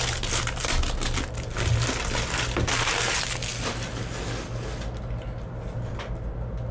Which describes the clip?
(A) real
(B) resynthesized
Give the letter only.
A